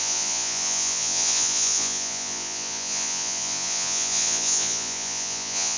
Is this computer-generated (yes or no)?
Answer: yes